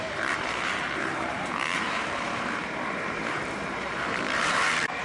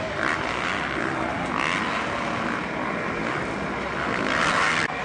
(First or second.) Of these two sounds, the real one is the second